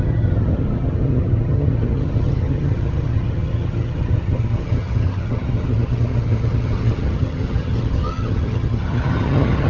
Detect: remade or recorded remade